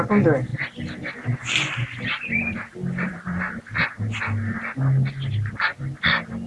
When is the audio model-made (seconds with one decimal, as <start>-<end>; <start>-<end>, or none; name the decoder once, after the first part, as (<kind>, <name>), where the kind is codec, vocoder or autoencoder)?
0.5-3.6 (vocoder, BigVGAN v2)